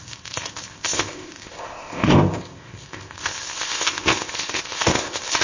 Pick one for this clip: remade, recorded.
remade